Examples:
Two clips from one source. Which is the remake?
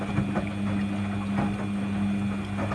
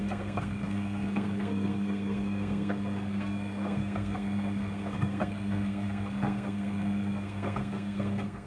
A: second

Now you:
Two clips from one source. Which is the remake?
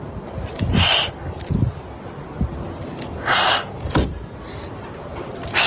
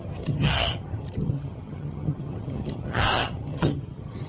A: second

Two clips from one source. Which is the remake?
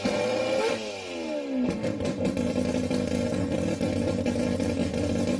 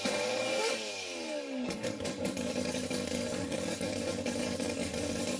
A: second